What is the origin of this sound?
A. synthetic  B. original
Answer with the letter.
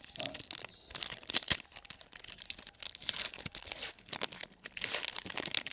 B